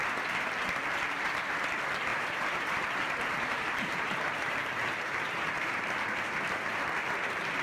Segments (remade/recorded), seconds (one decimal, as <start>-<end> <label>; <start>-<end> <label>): 0.0-2.1 recorded; 2.1-6.2 remade; 6.2-7.6 recorded

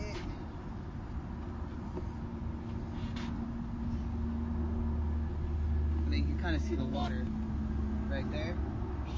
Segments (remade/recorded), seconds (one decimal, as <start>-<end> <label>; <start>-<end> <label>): 0.0-6.6 recorded; 6.6-7.1 remade; 7.1-9.2 recorded

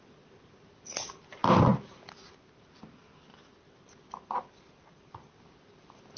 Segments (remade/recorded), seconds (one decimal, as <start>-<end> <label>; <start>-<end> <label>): 0.0-6.2 recorded